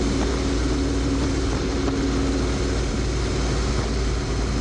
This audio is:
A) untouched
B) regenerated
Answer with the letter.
A